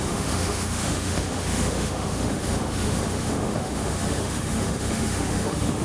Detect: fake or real fake